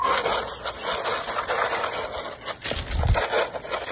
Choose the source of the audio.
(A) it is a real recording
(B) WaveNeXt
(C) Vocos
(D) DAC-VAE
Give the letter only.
A